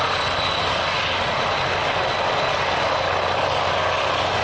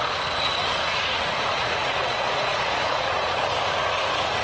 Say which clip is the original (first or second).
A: first